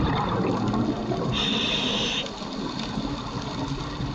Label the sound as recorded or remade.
recorded